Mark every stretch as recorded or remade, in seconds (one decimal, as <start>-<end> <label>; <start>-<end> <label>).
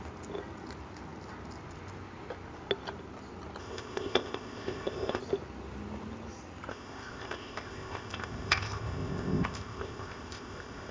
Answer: 0.0-3.6 recorded; 3.6-5.2 remade; 5.2-6.7 recorded; 6.7-10.9 remade